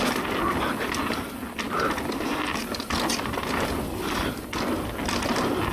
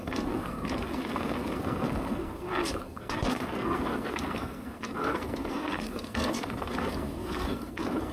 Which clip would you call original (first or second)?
first